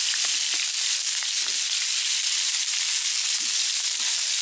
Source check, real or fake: real